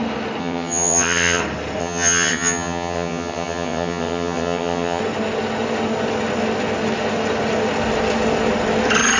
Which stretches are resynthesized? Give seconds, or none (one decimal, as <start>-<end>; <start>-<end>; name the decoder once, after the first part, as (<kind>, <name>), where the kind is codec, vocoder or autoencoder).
0.4-1.4 (vocoder, HiFi-GAN); 1.8-5.0